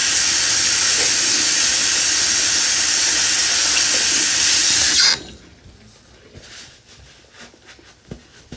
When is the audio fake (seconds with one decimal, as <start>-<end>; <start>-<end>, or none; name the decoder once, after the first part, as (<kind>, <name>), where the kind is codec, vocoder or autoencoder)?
none

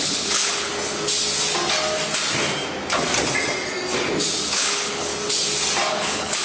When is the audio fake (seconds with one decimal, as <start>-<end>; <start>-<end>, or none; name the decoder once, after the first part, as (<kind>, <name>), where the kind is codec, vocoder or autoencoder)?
0.0-0.7 (codec, HILCodec); 4.5-5.1; 5.9-6.4

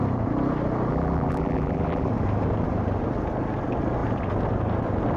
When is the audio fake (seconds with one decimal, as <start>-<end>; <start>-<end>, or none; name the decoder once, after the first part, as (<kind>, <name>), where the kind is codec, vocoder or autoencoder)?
0.9-2.1 (vocoder, BigVGAN v2)

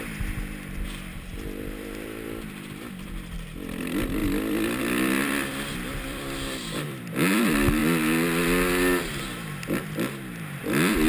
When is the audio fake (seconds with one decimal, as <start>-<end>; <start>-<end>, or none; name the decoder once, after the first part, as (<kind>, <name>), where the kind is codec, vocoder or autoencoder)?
0.0-4.2 (vocoder, BigVGAN v2); 4.8-7.8; 10.6-11.1

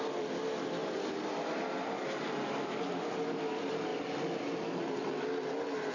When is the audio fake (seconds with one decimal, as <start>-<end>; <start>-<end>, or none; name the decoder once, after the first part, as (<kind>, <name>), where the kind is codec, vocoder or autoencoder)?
none